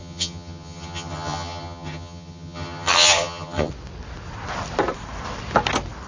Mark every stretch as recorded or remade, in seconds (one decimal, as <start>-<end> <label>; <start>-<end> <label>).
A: 0.0-3.7 remade; 3.7-6.1 recorded